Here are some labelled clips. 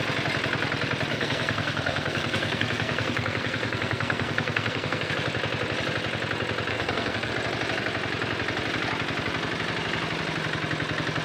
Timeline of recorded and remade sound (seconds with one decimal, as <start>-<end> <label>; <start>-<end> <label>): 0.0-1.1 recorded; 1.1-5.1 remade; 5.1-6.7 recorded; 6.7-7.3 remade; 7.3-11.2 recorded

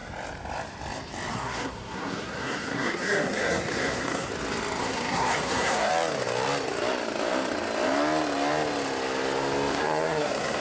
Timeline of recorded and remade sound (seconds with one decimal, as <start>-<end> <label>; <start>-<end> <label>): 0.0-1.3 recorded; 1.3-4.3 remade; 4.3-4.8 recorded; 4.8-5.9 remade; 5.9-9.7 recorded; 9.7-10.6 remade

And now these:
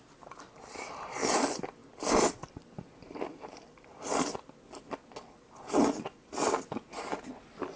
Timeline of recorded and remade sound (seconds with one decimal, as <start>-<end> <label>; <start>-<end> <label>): 0.0-7.8 recorded

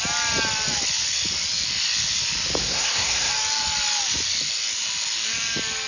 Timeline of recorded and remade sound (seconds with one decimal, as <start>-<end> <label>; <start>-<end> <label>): 0.0-2.6 recorded; 2.6-3.3 remade; 3.3-5.9 recorded